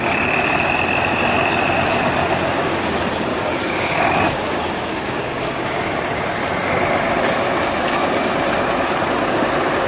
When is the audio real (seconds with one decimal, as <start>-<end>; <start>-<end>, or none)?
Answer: 0.0-3.3; 6.2-9.9